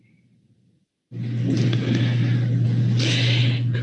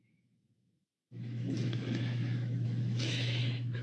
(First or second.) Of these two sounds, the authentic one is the first